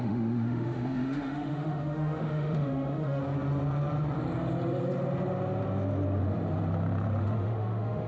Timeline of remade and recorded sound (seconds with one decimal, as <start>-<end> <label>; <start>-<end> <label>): 0.0-3.2 remade; 3.2-7.2 recorded; 7.2-8.1 remade